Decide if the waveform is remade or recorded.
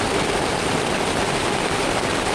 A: remade